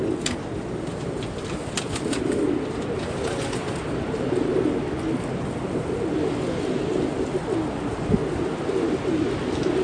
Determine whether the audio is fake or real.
real